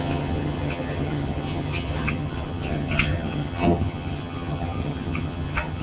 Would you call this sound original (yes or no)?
no